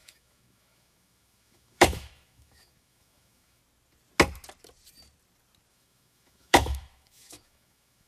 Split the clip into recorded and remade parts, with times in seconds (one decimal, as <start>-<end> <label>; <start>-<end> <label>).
0.0-3.6 remade; 3.6-5.7 recorded; 5.7-8.1 remade